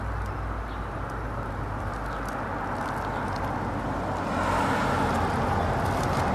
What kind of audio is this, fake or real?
real